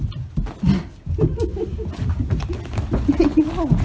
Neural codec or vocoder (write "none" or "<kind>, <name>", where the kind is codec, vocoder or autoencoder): none